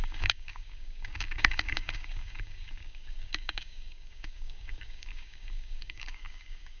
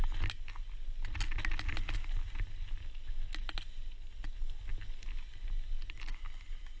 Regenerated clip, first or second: first